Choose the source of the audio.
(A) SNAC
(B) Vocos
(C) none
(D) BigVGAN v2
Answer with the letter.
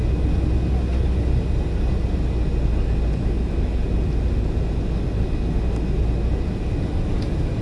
C